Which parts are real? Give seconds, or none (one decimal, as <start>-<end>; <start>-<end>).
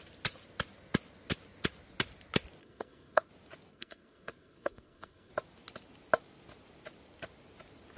0.0-2.6; 3.3-3.7; 5.3-8.0